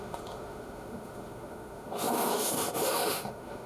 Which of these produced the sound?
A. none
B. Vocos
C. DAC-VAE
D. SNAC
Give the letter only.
C